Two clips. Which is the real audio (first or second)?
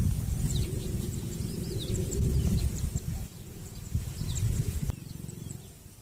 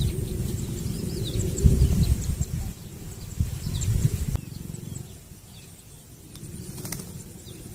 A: first